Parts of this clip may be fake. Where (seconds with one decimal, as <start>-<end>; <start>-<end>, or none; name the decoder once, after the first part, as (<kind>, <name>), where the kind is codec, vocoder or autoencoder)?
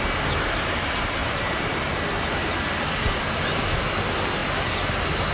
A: 1.2-2.5 (vocoder, BigVGAN v2)